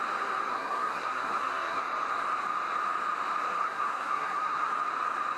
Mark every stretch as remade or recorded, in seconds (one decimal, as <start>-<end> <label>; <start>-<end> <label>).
0.0-0.5 recorded; 0.5-1.8 remade; 1.8-3.6 recorded; 3.6-4.7 remade; 4.7-5.4 recorded